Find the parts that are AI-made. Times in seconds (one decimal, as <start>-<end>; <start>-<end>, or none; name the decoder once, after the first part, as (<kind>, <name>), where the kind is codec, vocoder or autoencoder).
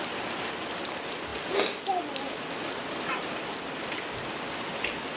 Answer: none